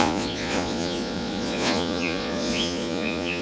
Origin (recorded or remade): remade